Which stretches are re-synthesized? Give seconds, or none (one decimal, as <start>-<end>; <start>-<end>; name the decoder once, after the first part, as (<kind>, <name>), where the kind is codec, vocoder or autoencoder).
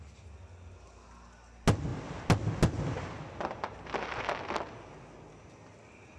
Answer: none